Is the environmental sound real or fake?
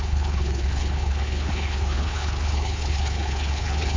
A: fake